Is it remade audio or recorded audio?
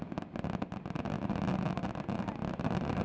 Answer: recorded